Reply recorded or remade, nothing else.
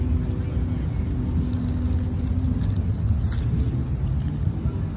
recorded